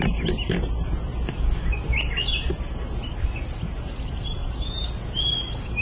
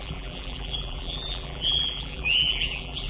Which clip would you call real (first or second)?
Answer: first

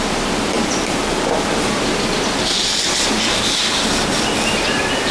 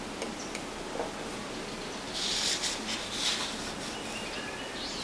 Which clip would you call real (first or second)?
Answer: second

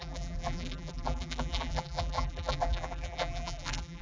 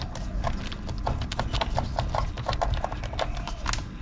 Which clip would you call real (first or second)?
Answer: second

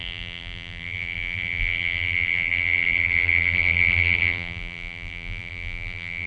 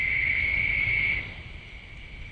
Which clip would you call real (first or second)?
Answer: second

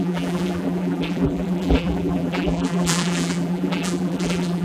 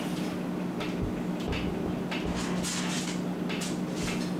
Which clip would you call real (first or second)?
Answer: second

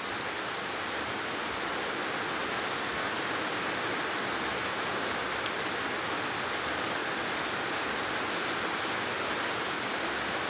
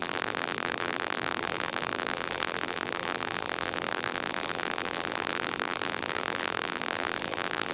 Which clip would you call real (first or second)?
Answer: first